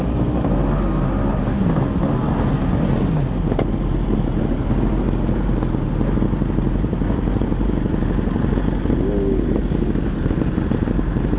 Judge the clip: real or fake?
real